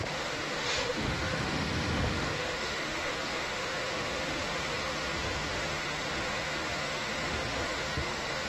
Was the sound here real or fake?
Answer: fake